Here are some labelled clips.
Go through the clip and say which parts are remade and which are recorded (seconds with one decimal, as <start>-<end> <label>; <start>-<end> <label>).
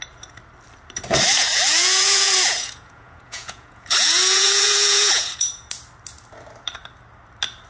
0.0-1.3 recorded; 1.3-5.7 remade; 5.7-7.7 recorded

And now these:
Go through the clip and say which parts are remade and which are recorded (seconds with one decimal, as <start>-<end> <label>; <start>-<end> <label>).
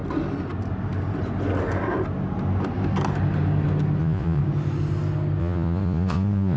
0.0-4.0 recorded; 4.0-4.4 remade; 4.4-5.4 recorded; 5.4-6.6 remade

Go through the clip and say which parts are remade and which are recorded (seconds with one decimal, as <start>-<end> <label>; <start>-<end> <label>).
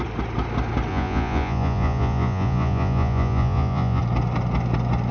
0.0-0.9 recorded; 0.9-4.0 remade; 4.0-5.1 recorded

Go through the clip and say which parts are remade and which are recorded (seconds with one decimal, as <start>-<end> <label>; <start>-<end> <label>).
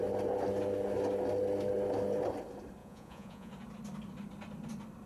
0.0-2.8 recorded; 2.8-3.5 remade; 3.5-5.1 recorded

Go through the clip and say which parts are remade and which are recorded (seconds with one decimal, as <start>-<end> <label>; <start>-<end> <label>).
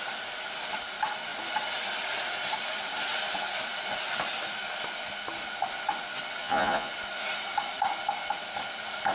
0.0-6.4 recorded; 6.4-6.9 remade; 6.9-9.1 recorded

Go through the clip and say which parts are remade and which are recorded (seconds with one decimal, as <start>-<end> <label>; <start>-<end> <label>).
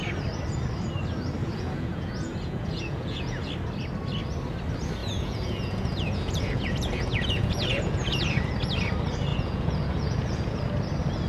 0.0-1.4 recorded; 1.4-3.5 remade; 3.5-5.0 recorded; 5.0-8.5 remade; 8.5-9.3 recorded; 9.3-10.6 remade; 10.6-11.3 recorded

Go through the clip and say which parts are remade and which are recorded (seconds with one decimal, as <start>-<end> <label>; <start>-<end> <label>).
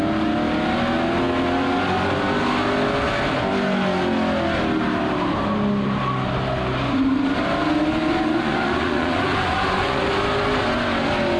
0.0-8.1 recorded; 8.1-10.0 remade; 10.0-11.4 recorded